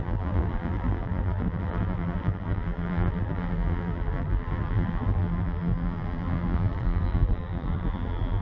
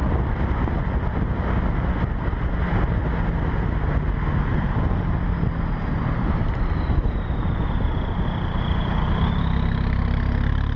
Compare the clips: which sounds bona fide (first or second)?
second